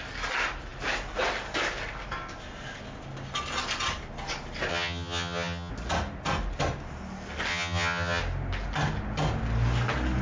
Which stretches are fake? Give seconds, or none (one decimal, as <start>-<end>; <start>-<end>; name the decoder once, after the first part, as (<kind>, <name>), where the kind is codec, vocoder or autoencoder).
4.7-5.7 (vocoder, HiFi-GAN); 7.5-8.2